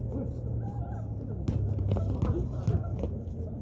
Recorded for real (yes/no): yes